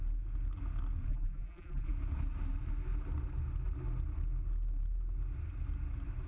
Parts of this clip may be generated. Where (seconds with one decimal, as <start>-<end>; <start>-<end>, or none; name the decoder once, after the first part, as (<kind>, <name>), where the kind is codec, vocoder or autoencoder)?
1.1-1.9 (vocoder, BigVGAN v2)